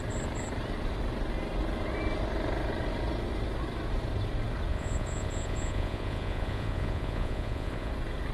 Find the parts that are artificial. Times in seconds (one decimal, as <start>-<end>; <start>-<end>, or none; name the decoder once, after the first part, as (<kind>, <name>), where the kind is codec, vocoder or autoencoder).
4.7-7.9 (vocoder, Vocos)